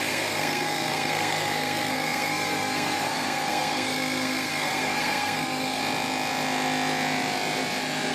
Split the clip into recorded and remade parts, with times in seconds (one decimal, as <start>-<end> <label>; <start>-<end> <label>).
0.0-5.8 remade; 5.8-8.1 recorded